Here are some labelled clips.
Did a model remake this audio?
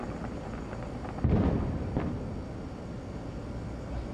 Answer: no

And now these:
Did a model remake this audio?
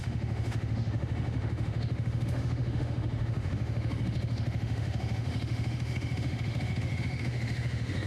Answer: yes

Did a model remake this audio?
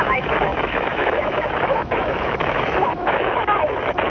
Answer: yes